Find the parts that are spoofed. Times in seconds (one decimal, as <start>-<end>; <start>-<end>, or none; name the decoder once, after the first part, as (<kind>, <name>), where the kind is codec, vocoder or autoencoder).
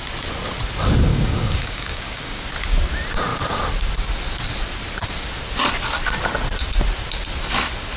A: 1.1-2.4 (codec, DAC)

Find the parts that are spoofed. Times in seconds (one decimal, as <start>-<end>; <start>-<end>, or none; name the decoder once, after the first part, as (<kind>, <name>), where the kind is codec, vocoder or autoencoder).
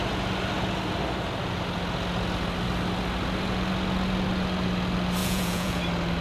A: 5.2-5.8 (vocoder, Vocos)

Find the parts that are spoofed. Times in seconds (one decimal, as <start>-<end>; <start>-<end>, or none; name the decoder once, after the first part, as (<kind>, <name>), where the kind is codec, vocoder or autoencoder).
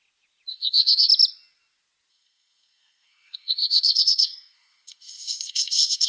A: 0.5-1.1 (codec, SNAC); 2.1-6.1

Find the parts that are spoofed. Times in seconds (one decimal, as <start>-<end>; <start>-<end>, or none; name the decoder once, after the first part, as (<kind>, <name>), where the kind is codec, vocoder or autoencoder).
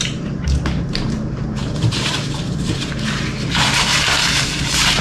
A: 0.0-5.0 (vocoder, BigVGAN v2)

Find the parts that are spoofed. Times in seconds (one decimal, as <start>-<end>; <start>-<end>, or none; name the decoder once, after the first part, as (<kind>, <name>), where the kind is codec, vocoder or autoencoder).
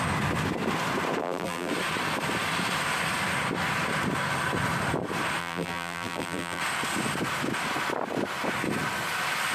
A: 1.2-1.7 (vocoder, BigVGAN v2); 5.4-6.6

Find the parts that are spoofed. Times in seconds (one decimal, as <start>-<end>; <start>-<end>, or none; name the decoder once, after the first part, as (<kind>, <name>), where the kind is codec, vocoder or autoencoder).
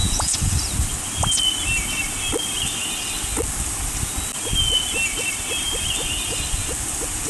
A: 0.0-0.5 (vocoder, Vocos)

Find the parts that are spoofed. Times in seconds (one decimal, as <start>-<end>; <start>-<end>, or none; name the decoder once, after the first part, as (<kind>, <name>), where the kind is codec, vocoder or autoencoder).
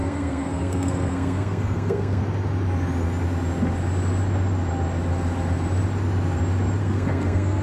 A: 0.0-2.2 (codec, SNAC); 6.8-7.6